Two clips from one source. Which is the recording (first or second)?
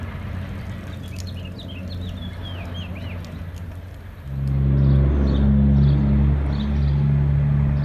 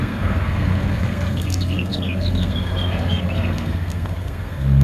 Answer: first